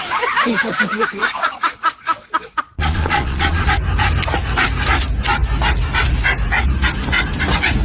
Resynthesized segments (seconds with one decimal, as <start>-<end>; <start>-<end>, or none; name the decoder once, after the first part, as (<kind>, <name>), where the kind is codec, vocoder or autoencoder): 1.2-3.7 (vocoder, Vocos)